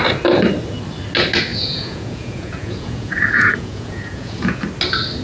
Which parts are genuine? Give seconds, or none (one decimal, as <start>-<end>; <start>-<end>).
0.0-1.5; 4.6-5.2